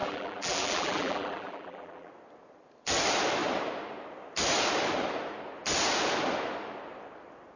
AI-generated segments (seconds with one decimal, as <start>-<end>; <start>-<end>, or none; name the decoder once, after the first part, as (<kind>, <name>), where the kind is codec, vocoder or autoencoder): 0.0-2.1 (vocoder, BigVGAN v2)

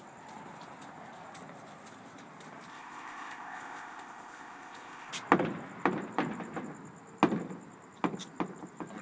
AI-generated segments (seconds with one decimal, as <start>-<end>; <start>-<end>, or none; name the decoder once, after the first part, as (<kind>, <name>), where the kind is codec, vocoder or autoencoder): 2.7-5.1 (codec, ZipCodec)

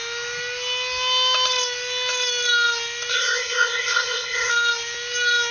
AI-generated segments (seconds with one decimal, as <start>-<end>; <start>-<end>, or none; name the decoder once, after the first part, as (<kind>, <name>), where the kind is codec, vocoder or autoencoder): 3.1-4.5 (codec, SNAC)

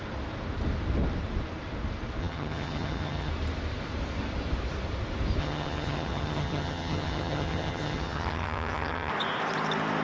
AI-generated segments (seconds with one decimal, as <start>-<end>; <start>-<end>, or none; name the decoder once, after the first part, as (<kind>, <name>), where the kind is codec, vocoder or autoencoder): 2.2-3.3 (vocoder, HiFi-GAN); 5.4-9.1

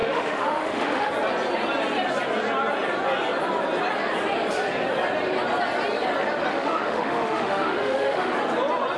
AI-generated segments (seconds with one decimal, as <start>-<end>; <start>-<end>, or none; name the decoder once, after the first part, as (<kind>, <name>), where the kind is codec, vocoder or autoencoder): 0.0-1.1 (autoencoder, DAC-VAE); 6.5-8.3

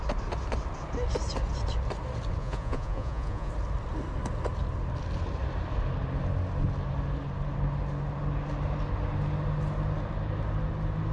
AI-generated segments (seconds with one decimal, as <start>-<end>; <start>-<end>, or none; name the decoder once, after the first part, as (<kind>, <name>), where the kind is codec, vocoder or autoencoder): 2.4-3.5 (vocoder, Vocos)